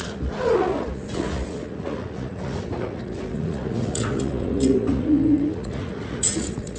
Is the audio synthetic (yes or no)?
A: yes